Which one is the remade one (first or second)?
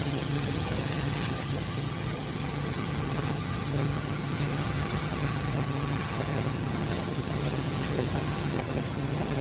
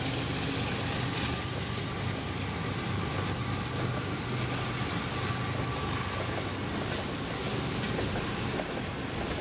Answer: first